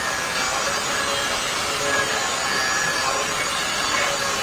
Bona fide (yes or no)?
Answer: yes